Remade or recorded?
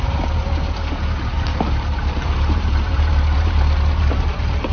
remade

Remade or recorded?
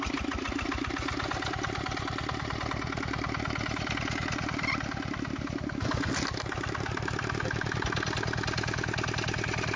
remade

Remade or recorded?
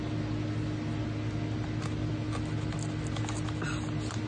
recorded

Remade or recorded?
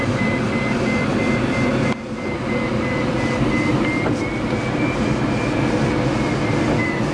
recorded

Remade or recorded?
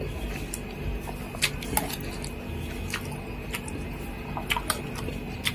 recorded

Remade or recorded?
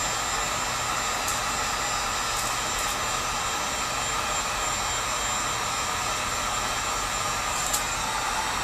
recorded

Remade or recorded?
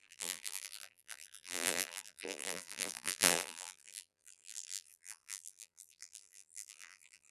remade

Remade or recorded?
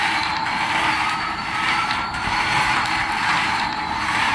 remade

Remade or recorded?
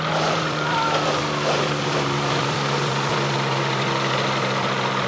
remade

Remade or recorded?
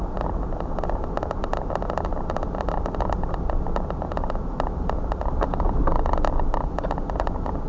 recorded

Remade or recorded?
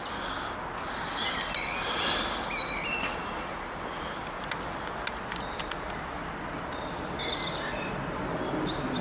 recorded